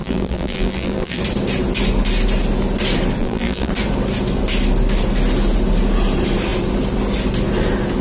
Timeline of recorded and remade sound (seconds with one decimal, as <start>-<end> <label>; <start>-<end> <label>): 0.0-1.2 remade; 1.2-3.2 recorded; 3.2-3.7 remade; 3.7-8.0 recorded